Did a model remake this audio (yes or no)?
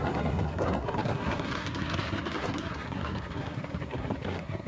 yes